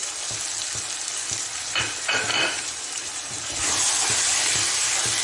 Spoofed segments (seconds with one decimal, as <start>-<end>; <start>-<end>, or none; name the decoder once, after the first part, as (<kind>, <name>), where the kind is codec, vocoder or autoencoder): 2.3-5.2 (vocoder, BigVGAN v2)